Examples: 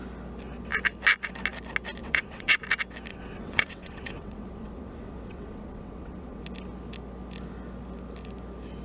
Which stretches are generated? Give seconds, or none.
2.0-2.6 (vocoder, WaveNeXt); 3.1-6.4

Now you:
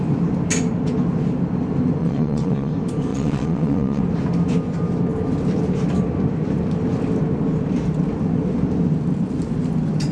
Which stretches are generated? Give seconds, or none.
2.0-2.7 (vocoder, WaveNeXt); 3.1-4.0

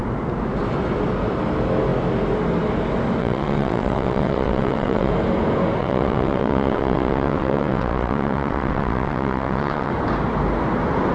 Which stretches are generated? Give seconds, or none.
3.2-5.1 (vocoder, WaveNeXt); 5.8-9.9

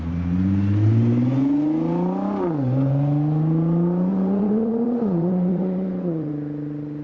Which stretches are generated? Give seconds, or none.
4.1-6.3 (vocoder, WaveNeXt)

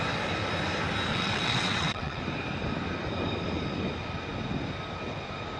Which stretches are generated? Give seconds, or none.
1.1-2.2 (vocoder, WaveNeXt)

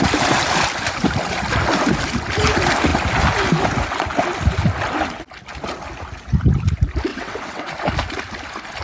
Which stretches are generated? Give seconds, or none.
7.1-7.7 (vocoder, WaveNeXt)

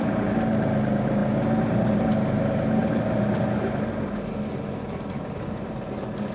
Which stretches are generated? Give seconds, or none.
none

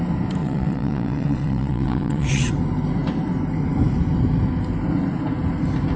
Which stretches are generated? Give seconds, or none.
0.4-2.5 (vocoder, WaveNeXt)